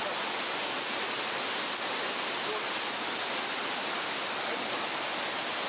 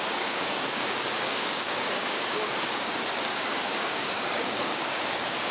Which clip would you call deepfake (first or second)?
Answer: second